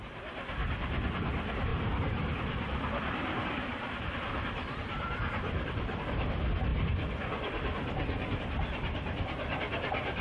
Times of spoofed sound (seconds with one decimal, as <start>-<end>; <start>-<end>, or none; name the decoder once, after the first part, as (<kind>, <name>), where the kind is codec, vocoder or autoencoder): 1.7-6.0 (vocoder, BigVGAN v2)